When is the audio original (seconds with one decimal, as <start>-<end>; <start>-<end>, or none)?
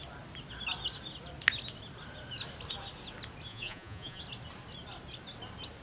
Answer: 0.0-3.5; 4.2-5.8